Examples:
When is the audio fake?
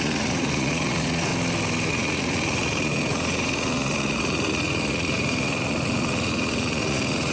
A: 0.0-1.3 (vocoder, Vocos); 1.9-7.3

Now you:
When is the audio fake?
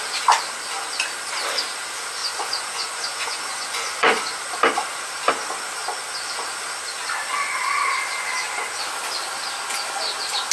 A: 2.2-4.2 (vocoder, Vocos)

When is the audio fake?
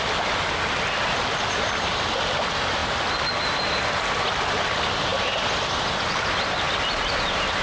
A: none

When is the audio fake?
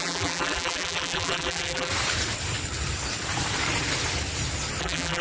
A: 0.0-1.9 (vocoder, BigVGAN v2); 4.8-5.2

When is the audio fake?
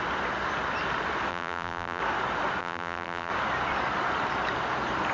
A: 1.3-2.0 (vocoder, BigVGAN v2); 2.6-3.3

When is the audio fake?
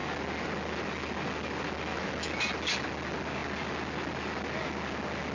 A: 1.9-2.4 (autoencoder, DAC-VAE)